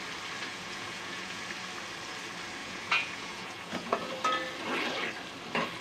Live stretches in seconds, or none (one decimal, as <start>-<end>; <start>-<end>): 0.0-0.5; 1.4-2.6; 4.1-5.8